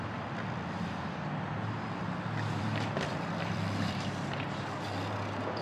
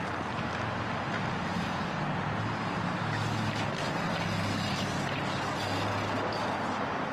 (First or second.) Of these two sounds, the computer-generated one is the first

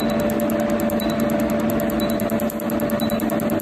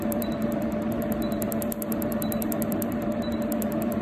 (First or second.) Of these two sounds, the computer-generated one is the second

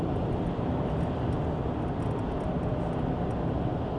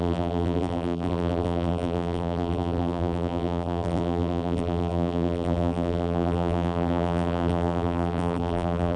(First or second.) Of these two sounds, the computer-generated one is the second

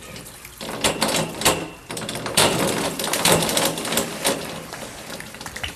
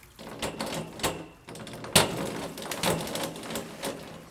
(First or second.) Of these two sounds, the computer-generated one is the first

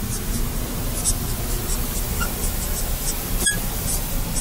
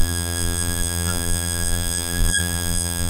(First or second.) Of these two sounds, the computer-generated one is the second